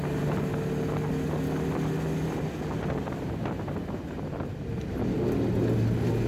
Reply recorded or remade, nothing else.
recorded